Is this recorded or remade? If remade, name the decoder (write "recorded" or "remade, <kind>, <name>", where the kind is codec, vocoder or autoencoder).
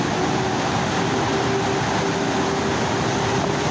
recorded